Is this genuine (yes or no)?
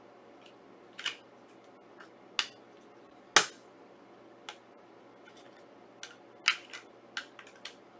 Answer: yes